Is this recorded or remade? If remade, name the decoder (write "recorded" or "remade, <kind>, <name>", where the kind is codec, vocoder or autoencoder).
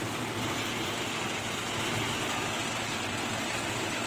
recorded